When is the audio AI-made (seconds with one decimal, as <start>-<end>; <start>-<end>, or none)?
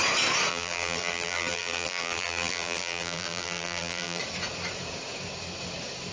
0.5-4.2